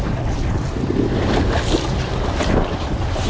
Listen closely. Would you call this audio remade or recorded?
recorded